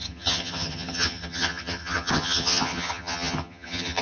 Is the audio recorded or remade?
remade